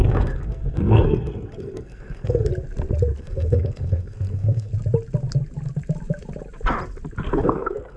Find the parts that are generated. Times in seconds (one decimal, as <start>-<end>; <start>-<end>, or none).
0.0-2.5; 3.2-4.7; 7.3-8.0